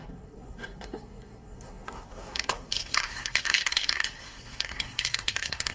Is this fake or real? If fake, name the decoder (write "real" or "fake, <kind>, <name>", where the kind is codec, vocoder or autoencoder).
fake, codec, SNAC